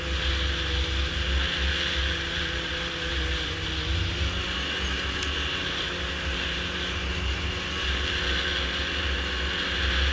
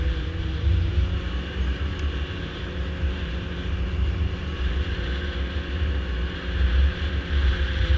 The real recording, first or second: first